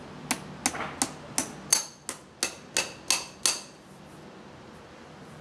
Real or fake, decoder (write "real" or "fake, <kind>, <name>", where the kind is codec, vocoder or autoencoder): real